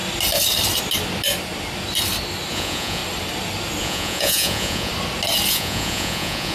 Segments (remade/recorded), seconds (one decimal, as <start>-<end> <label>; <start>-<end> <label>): 0.0-2.5 recorded; 2.5-3.0 remade; 3.0-3.8 recorded; 3.8-4.9 remade; 4.9-5.5 recorded; 5.5-6.5 remade